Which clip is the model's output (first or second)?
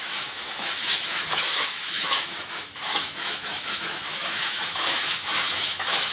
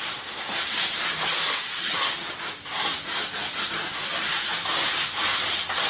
first